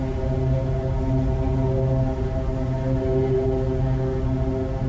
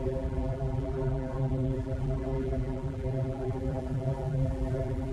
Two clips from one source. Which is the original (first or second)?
first